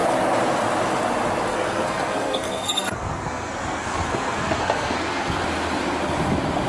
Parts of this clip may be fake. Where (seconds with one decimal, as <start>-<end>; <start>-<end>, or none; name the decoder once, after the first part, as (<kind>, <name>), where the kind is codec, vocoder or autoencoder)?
1.5-5.4 (codec, SNAC)